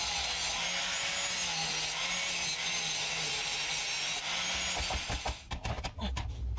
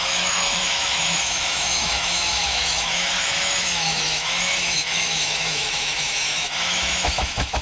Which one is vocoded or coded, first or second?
second